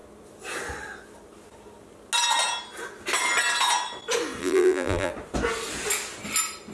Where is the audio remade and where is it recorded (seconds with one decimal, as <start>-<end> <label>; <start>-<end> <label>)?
0.0-4.4 recorded; 4.4-5.1 remade; 5.1-6.7 recorded